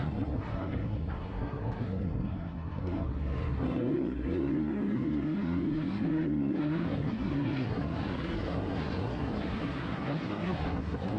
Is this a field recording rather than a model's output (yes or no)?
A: no